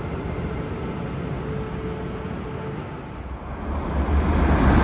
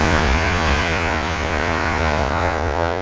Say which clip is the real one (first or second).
first